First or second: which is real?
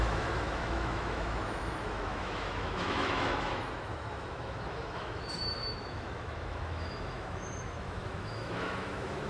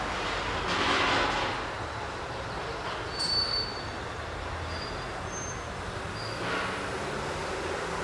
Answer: second